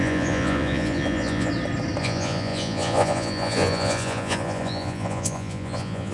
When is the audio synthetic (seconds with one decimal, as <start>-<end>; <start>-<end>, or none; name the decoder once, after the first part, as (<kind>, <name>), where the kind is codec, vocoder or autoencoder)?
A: 0.0-1.5 (vocoder, Vocos); 2.0-6.1